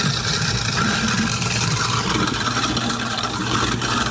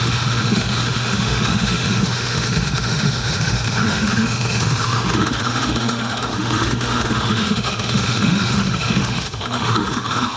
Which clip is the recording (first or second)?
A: first